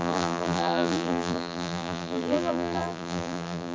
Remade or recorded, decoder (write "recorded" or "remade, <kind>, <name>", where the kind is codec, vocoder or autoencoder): remade, vocoder, BigVGAN v2